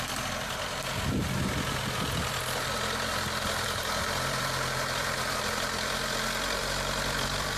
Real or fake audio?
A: fake